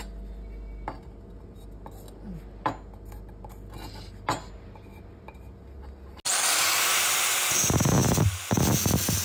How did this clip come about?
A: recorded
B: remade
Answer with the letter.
A